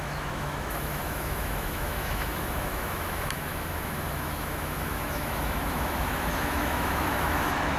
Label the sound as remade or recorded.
remade